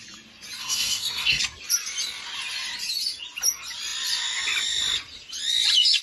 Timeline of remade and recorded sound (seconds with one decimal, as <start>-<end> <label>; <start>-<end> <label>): 0.0-0.6 recorded; 0.6-1.4 remade; 1.4-6.0 recorded